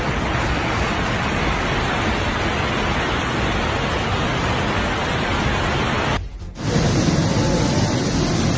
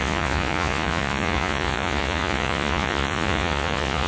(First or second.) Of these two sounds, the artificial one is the second